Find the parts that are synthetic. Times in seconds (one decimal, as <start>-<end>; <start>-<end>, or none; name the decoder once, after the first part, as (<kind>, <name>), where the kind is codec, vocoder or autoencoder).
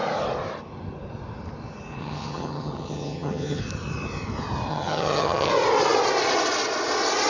2.0-3.6 (vocoder, HiFi-GAN); 4.7-5.5